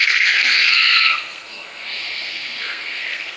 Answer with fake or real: fake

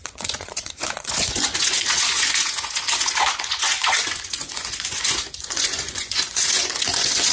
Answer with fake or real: fake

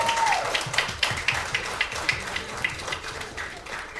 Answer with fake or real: fake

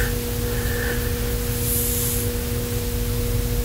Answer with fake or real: real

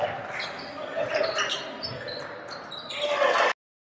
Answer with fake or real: real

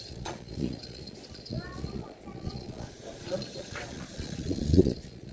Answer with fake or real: fake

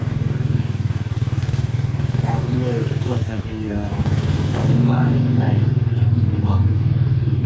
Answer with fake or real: fake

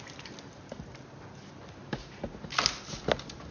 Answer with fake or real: real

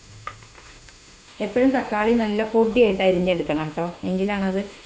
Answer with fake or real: fake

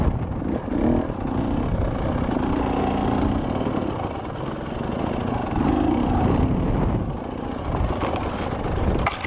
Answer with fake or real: real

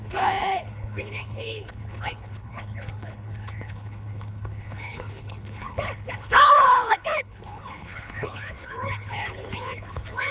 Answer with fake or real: fake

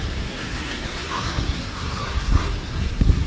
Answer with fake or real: fake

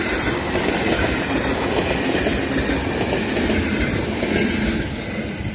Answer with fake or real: real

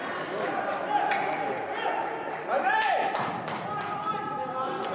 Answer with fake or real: real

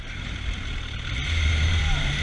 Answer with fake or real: fake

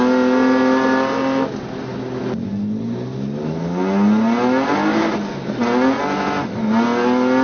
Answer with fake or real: real